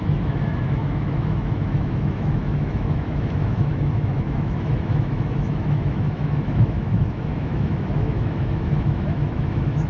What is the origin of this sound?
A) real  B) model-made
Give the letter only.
B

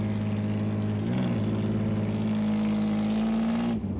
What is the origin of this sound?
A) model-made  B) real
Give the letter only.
B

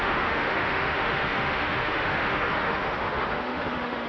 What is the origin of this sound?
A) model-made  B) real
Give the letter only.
A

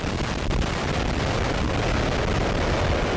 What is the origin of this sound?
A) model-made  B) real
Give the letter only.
B